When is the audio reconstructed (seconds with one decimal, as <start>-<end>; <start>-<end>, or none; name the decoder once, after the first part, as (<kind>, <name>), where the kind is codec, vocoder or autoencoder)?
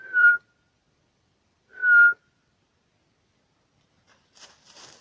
0.0-1.8 (vocoder, BigVGAN v2)